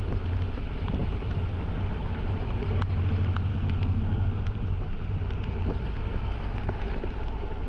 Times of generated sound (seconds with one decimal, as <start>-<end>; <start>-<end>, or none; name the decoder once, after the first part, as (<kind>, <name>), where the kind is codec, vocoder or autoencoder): 3.5-4.4 (codec, SNAC); 5.9-6.9